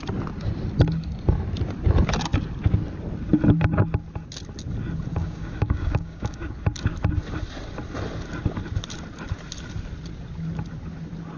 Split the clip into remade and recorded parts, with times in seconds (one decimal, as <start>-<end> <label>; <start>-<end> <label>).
0.0-5.1 recorded; 5.1-6.5 remade; 6.5-11.4 recorded